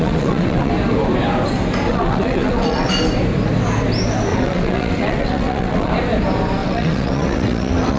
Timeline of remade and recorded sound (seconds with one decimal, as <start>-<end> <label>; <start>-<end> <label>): 0.0-0.7 remade; 0.7-1.9 recorded; 1.9-2.9 remade; 2.9-4.3 recorded; 4.3-5.9 remade; 5.9-6.6 recorded; 6.6-8.0 remade